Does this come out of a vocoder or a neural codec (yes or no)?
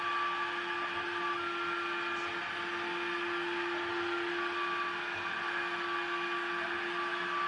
no